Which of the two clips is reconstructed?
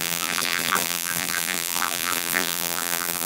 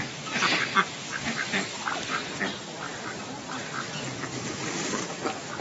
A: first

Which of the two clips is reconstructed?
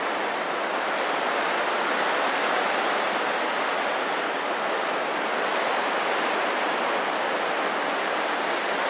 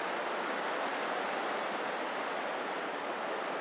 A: second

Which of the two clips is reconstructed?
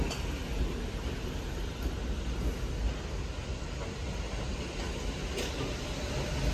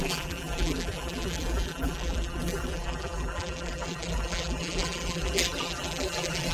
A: second